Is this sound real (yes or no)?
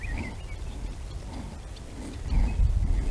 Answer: yes